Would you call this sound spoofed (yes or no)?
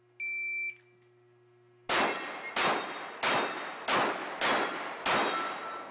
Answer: no